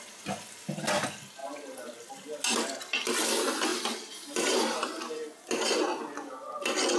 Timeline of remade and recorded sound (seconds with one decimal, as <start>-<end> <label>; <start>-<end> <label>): 0.0-7.0 recorded